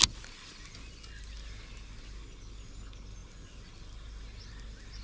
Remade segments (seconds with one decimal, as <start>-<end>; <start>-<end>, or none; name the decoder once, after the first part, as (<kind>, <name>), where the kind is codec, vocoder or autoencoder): none